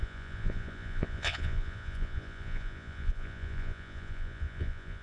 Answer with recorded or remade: remade